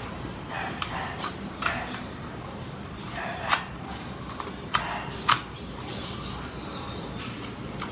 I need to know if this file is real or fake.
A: fake